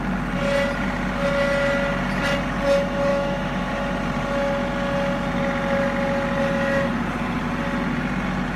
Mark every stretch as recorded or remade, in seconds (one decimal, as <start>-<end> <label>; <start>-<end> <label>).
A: 0.0-3.1 recorded; 3.1-3.7 remade; 3.7-8.6 recorded

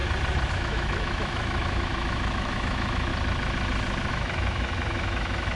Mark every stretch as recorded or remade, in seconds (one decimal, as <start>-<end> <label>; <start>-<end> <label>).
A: 0.0-0.5 recorded; 0.5-3.1 remade; 3.1-4.1 recorded; 4.1-5.6 remade

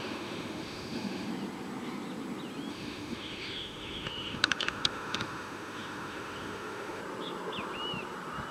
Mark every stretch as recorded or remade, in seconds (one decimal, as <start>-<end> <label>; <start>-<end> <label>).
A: 0.0-1.3 remade; 1.3-2.7 recorded; 2.7-7.0 remade; 7.0-8.5 recorded

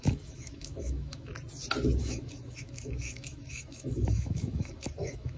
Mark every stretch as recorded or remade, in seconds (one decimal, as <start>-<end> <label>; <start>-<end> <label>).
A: 0.0-1.3 remade; 1.3-2.0 recorded; 2.0-5.4 remade

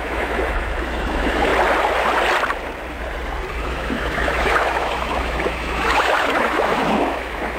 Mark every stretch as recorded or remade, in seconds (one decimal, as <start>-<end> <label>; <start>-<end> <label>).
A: 0.0-1.5 remade; 1.5-3.6 recorded; 3.6-7.6 remade

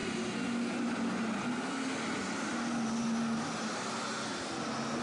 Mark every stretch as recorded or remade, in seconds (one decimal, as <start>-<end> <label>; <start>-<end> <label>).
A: 0.0-5.0 recorded